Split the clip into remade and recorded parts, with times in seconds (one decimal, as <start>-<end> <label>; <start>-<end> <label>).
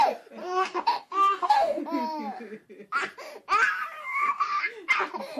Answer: 0.0-0.4 recorded; 0.4-1.8 remade; 1.8-4.0 recorded; 4.0-4.6 remade; 4.6-5.4 recorded